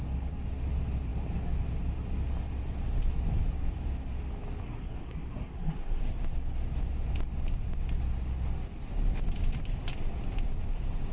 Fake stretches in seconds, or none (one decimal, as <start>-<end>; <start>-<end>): 4.6-6.0